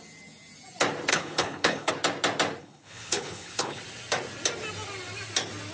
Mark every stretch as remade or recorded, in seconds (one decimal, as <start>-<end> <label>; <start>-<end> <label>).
0.0-1.1 recorded; 1.1-1.9 remade; 1.9-2.6 recorded; 2.6-3.8 remade; 3.8-5.7 recorded